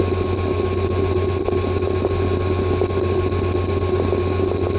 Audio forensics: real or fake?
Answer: real